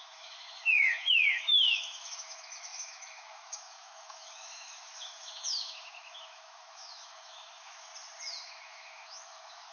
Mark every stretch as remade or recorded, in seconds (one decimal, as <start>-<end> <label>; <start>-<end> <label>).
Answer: 0.0-7.9 remade; 7.9-8.4 recorded; 8.4-9.7 remade